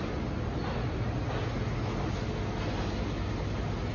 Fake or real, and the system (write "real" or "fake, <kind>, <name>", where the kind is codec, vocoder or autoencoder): real